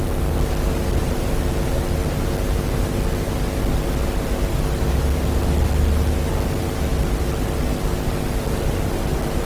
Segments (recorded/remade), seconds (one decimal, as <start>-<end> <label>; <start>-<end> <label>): 0.0-9.5 recorded